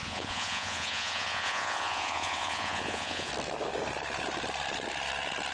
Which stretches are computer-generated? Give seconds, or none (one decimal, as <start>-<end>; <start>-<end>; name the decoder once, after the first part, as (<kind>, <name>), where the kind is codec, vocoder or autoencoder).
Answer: 0.0-3.3 (vocoder, Vocos)